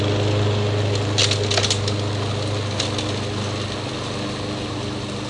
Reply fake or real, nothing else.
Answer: real